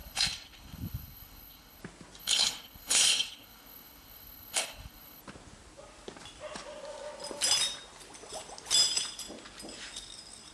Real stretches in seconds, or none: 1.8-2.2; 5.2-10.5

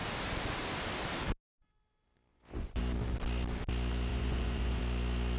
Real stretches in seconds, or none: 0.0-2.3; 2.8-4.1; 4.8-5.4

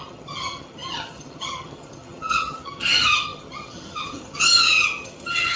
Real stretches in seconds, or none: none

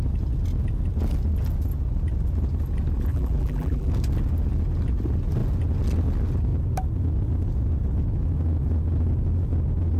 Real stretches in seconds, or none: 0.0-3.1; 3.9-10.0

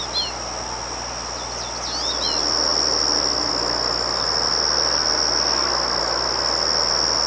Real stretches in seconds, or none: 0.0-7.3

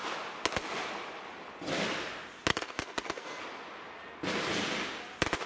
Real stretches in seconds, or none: 0.0-2.5; 3.4-5.5

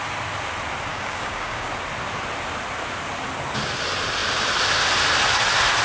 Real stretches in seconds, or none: 0.0-0.9; 1.7-5.8

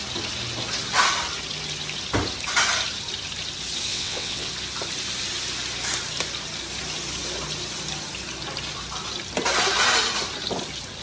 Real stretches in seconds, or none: 0.0-3.9; 4.5-11.0